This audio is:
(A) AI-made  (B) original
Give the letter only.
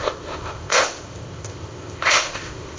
A